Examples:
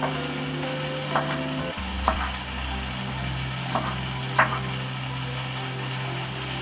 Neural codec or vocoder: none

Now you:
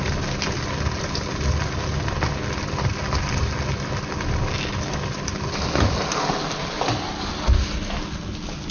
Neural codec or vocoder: none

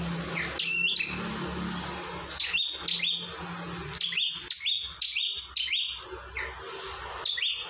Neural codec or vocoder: none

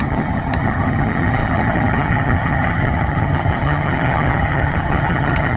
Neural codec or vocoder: vocoder, HiFi-GAN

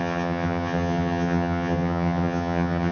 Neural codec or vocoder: vocoder, HiFi-GAN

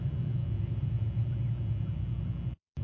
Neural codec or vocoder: none